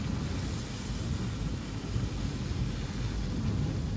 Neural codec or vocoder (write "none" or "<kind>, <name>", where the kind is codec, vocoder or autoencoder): none